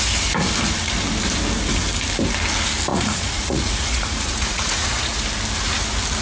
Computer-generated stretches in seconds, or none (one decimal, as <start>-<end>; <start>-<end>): 2.9-5.2